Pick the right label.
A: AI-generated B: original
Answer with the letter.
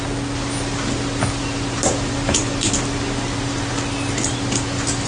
B